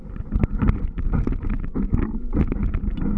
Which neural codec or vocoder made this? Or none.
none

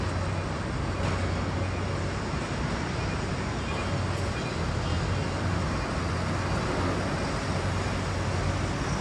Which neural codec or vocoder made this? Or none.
none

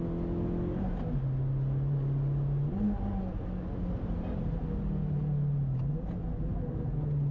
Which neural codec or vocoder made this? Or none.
none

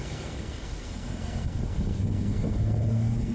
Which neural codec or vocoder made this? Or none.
codec, SNAC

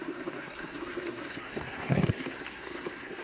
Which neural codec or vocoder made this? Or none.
codec, SNAC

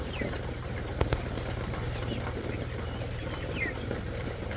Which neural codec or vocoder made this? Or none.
vocoder, BigVGAN v2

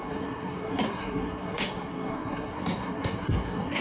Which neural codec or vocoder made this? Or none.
codec, SNAC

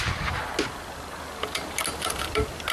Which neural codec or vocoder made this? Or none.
none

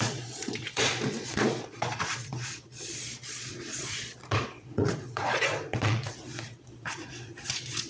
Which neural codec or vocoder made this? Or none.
vocoder, Vocos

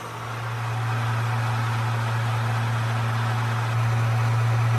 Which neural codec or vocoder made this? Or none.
none